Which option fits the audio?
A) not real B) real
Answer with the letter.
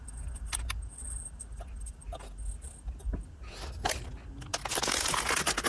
B